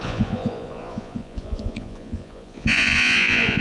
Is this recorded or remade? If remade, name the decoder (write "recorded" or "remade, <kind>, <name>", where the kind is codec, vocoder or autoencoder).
remade, vocoder, Vocos